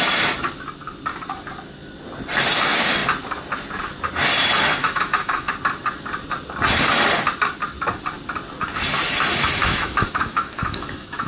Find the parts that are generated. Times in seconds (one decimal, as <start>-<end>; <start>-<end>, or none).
4.8-5.5; 9.6-11.3